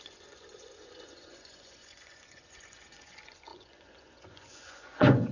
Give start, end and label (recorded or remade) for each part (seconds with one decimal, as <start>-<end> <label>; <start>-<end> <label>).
0.0-5.3 remade